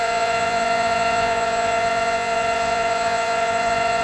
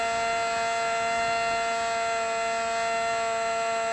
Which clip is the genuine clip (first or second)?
second